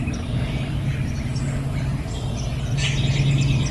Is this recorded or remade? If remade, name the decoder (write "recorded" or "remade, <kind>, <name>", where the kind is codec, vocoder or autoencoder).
recorded